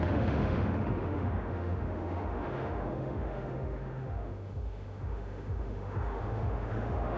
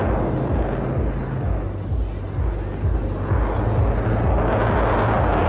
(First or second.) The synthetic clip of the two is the first